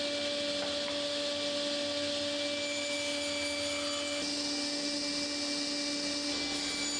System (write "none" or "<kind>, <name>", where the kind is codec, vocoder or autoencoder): none